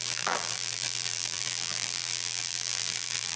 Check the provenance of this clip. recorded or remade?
remade